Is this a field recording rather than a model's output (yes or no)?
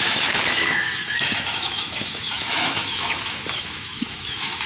no